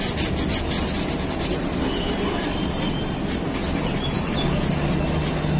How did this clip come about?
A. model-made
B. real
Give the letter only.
B